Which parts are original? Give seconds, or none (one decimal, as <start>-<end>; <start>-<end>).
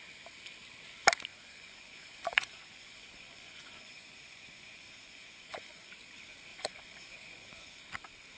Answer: 0.0-1.3; 5.9-6.5; 7.8-8.4